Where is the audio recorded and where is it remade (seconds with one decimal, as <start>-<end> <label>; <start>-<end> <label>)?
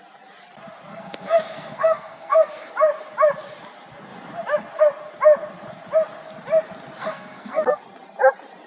0.0-0.9 recorded; 0.9-2.7 remade; 2.7-7.0 recorded; 7.0-7.8 remade; 7.8-8.7 recorded